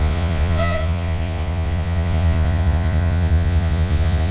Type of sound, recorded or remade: remade